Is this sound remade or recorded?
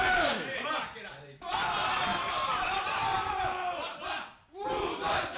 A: remade